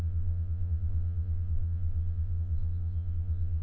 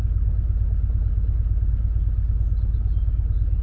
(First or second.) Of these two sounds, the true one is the second